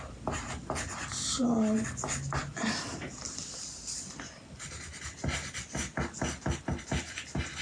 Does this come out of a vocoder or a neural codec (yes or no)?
no